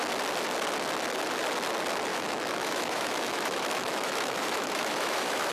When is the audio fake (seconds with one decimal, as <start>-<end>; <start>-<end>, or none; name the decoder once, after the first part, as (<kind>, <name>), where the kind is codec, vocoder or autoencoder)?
2.1-5.5 (autoencoder, DAC-VAE)